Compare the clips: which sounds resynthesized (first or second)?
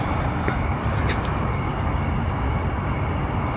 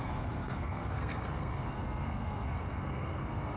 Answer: second